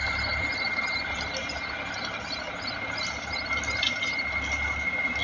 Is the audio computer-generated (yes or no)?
no